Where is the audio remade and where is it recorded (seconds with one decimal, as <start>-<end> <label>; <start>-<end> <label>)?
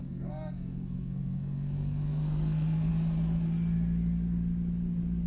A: 0.0-2.9 remade; 2.9-5.3 recorded